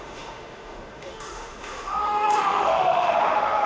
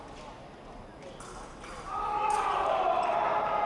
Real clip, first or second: second